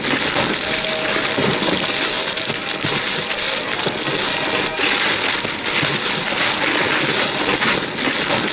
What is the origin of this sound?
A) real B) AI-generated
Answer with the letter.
A